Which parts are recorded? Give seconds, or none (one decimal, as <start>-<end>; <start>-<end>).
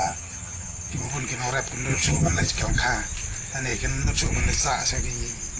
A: 1.1-1.9; 2.5-5.6